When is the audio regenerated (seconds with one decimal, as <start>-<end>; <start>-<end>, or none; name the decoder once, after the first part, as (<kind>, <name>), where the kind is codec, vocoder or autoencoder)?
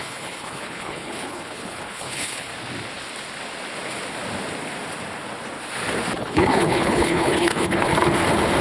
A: 0.0-2.5 (codec, HILCodec); 6.2-7.9